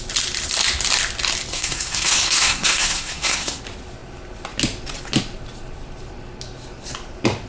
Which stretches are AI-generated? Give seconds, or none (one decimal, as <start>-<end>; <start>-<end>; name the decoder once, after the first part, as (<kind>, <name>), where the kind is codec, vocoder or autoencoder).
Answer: 1.5-3.6 (codec, SNAC)

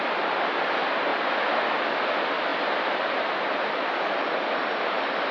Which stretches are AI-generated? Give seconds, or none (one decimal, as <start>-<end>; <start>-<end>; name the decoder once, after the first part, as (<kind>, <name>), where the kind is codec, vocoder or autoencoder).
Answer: 0.0-1.1 (vocoder, BigVGAN v2); 1.8-5.3

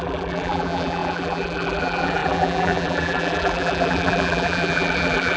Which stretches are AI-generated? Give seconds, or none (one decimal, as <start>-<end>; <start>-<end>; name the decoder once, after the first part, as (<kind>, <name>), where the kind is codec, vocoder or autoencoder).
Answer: 0.0-5.4 (vocoder, BigVGAN v2)

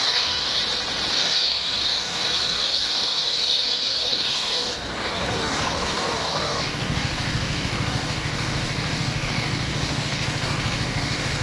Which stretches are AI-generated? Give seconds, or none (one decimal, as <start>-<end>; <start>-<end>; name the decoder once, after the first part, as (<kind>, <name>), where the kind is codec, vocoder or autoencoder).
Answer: 0.0-0.6 (codec, DAC); 1.1-11.4

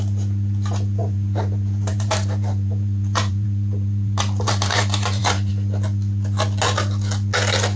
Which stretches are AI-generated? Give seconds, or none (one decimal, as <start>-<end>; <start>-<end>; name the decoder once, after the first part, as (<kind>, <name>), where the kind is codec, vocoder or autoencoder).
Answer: 1.0-5.5 (vocoder, BigVGAN v2)

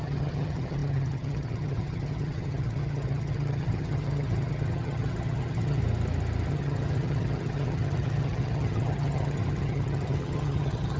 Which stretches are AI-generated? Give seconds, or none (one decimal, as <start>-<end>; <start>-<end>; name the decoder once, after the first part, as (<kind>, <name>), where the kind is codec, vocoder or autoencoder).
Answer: 0.0-5.8 (vocoder, HiFi-GAN); 6.5-11.0